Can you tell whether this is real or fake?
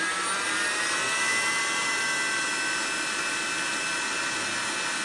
real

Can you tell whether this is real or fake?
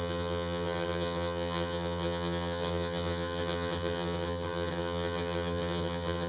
fake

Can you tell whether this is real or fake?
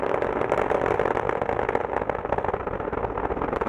real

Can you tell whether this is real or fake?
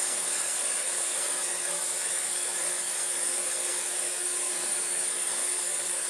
fake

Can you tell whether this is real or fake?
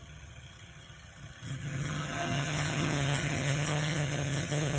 fake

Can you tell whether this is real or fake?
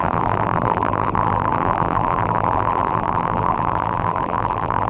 fake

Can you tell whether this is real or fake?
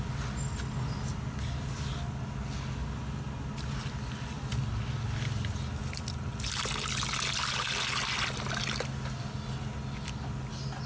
real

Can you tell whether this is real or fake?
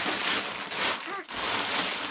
real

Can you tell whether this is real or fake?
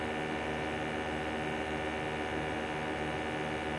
real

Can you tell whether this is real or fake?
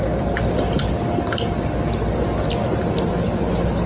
real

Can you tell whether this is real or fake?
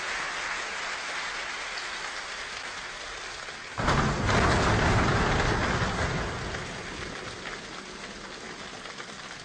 real